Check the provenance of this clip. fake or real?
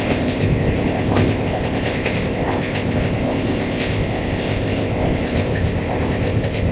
fake